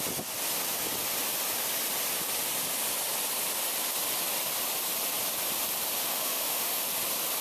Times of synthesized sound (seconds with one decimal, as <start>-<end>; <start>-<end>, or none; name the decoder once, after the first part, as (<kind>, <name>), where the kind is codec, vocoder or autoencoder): 6.1-6.8 (autoencoder, DAC-VAE)